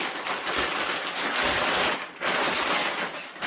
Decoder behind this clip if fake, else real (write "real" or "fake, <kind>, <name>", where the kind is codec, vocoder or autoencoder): real